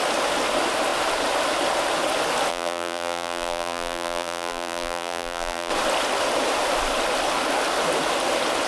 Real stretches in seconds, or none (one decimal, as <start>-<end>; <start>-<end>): 0.0-2.5; 5.7-8.7